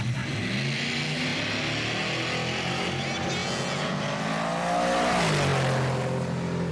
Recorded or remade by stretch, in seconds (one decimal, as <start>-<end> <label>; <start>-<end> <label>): 0.0-3.4 recorded; 3.4-4.0 remade; 4.0-6.7 recorded